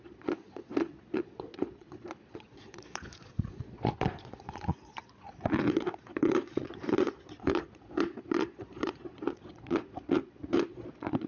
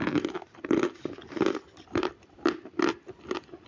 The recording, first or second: second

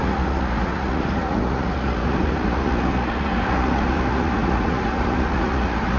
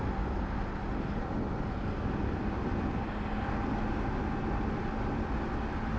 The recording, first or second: second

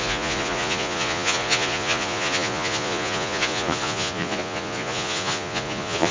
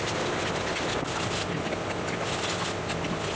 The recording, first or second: second